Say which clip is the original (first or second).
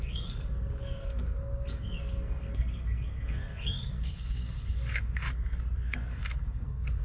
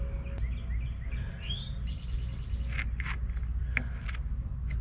second